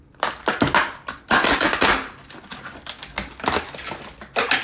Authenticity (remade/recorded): recorded